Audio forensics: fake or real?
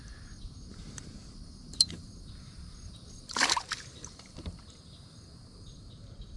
fake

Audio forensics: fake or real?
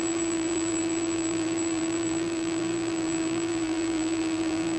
fake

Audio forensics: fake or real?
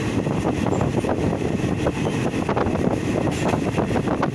fake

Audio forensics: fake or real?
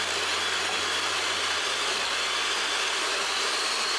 real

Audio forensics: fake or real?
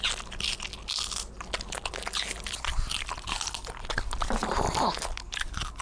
real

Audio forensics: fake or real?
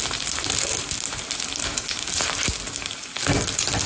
real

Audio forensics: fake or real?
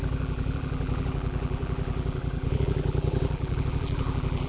fake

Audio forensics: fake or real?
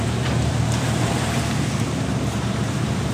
fake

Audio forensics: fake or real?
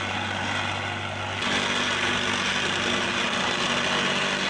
real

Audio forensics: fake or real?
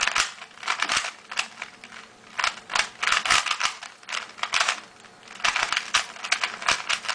real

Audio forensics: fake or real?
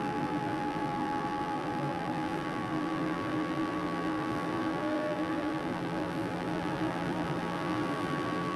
fake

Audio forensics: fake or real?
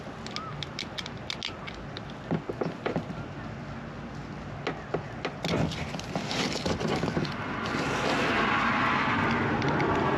real